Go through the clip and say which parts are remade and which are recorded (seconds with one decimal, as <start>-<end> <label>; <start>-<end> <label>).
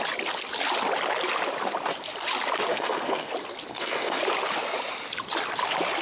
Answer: 0.0-2.7 recorded; 2.7-3.3 remade; 3.3-3.7 recorded; 3.7-4.2 remade; 4.2-6.0 recorded